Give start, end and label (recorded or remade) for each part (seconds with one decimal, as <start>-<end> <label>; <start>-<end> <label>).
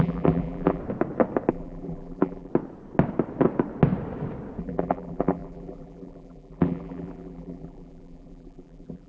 0.0-0.8 remade; 0.8-1.5 recorded; 1.5-2.5 remade; 2.5-4.6 recorded; 4.6-9.1 remade